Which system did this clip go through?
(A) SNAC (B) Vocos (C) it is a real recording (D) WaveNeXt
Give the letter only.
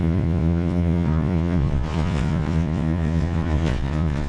B